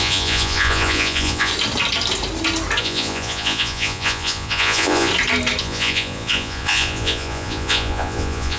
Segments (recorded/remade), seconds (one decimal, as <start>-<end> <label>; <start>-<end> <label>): 0.0-1.5 remade; 1.5-2.8 recorded; 2.8-5.1 remade; 5.1-5.6 recorded; 5.6-8.6 remade